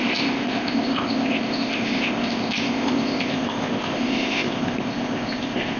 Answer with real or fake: fake